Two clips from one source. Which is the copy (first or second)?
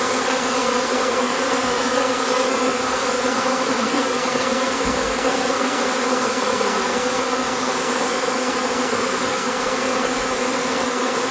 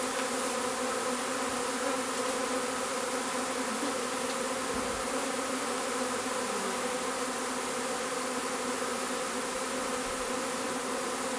first